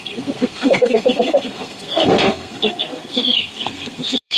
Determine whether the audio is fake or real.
fake